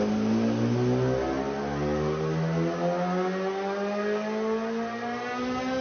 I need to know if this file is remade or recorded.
recorded